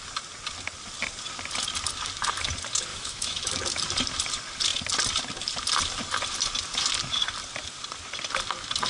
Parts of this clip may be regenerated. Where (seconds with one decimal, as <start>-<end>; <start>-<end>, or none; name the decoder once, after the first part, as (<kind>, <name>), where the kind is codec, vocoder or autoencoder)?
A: 2.9-3.5 (autoencoder, DAC-VAE)